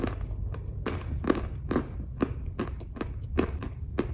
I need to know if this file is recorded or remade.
remade